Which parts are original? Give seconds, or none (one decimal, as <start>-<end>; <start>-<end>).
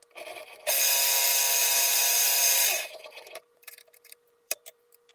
0.0-1.6